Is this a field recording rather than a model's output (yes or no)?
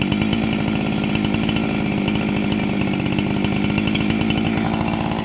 yes